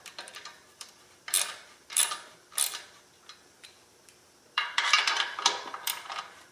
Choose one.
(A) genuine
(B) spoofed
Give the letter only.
B